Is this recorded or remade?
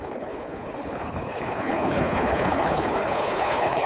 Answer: remade